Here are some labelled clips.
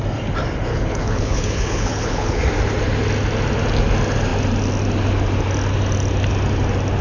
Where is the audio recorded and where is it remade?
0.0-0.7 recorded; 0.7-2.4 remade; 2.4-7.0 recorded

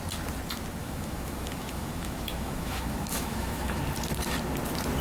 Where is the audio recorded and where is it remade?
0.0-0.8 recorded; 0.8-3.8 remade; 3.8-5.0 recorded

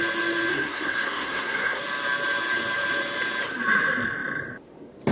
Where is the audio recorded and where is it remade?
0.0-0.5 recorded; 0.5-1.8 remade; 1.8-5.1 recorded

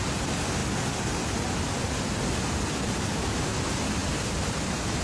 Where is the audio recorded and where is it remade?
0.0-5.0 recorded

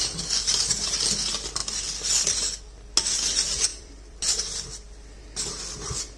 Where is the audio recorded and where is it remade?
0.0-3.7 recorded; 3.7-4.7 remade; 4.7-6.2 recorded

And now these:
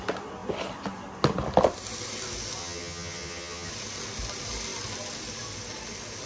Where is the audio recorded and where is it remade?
0.0-2.6 recorded; 2.6-3.7 remade; 3.7-6.3 recorded